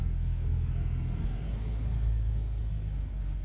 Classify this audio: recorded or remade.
remade